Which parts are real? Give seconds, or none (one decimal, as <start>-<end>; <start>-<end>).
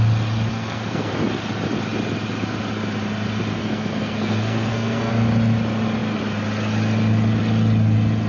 0.0-0.5; 1.1-3.5; 5.1-8.3